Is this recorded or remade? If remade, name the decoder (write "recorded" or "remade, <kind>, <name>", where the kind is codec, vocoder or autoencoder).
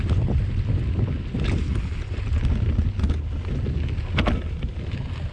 recorded